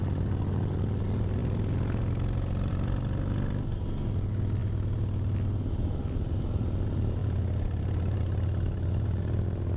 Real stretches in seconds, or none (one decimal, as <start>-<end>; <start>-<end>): 0.0-9.8